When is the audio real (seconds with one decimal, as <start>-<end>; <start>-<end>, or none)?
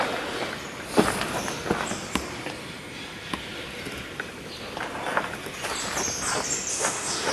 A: 0.0-6.7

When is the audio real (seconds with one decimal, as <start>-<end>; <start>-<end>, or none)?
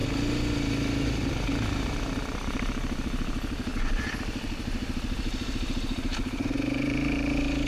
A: 0.0-1.5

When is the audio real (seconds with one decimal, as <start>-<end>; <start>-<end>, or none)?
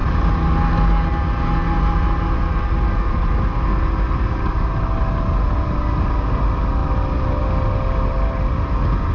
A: 0.0-9.1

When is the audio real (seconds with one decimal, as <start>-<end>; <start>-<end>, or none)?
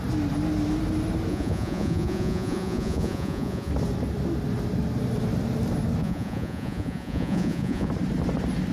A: 0.0-1.3; 3.7-6.0; 7.9-8.7